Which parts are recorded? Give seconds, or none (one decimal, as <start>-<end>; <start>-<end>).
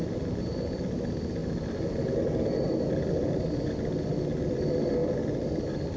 0.0-5.0